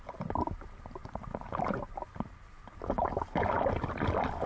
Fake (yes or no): no